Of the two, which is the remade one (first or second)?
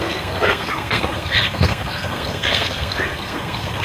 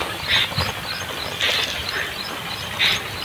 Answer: first